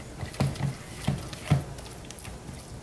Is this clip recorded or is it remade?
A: recorded